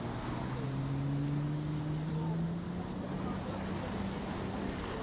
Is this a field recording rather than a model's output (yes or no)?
yes